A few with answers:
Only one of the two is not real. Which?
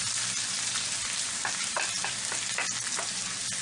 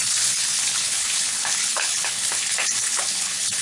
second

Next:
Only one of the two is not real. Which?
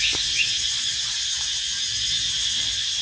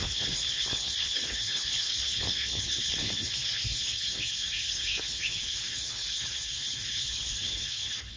second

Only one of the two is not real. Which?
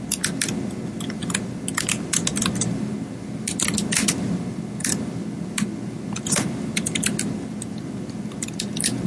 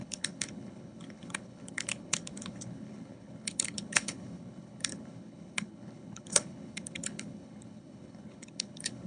second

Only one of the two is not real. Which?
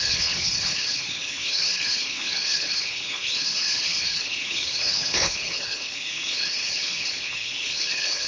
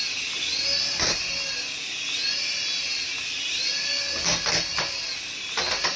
first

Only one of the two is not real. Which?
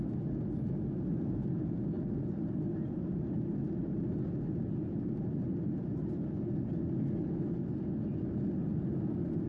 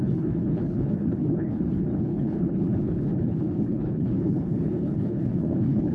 second